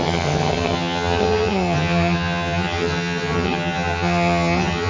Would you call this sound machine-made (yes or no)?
yes